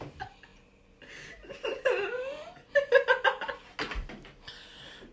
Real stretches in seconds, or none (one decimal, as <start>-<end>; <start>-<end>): 0.0-5.1